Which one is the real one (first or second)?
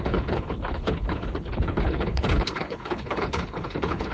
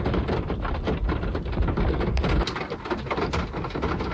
second